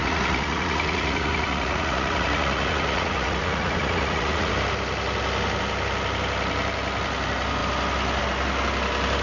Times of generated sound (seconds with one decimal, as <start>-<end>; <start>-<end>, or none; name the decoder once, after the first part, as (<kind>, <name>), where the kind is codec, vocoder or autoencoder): 0.0-4.5 (vocoder, Vocos)

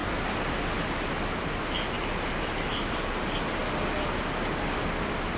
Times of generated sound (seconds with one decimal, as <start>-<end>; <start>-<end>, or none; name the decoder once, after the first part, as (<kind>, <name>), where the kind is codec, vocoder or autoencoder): none

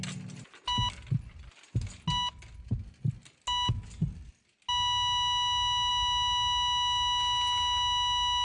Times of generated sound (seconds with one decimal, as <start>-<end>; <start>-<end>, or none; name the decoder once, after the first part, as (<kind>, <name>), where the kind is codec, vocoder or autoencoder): none